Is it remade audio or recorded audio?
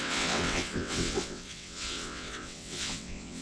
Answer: remade